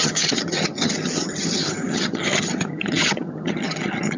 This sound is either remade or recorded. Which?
remade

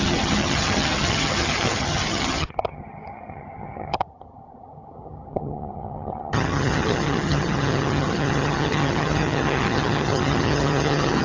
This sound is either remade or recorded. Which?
remade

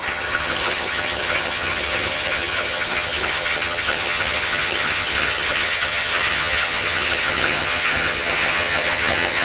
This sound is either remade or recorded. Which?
remade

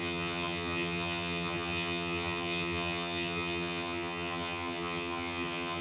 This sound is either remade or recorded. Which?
remade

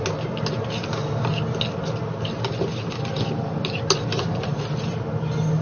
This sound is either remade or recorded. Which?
recorded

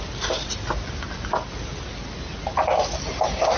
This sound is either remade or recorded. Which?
recorded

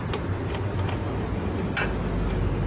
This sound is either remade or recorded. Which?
recorded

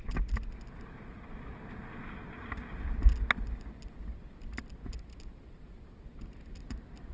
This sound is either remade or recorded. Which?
recorded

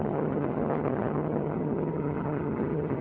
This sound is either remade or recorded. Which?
remade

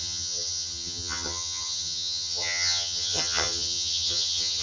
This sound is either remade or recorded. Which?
remade